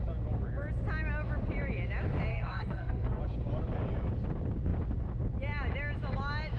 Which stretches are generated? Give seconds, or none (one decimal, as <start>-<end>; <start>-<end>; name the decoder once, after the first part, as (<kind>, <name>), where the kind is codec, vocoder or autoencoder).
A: 2.3-3.2 (codec, SNAC)